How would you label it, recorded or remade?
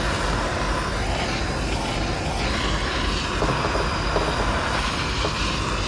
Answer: recorded